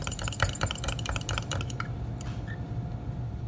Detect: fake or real real